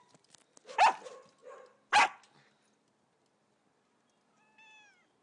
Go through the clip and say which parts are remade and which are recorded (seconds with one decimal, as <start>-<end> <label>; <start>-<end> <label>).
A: 0.0-5.2 recorded